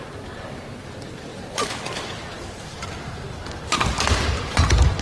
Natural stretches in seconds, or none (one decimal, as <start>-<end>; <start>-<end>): 0.0-1.3; 3.5-5.0